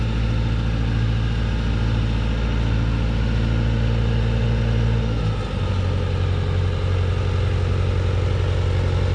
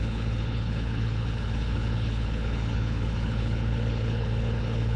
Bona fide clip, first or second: first